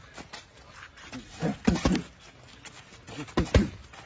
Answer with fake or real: real